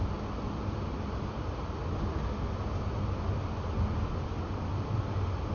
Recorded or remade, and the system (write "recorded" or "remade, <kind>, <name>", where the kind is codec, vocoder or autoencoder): recorded